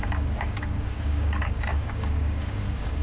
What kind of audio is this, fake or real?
fake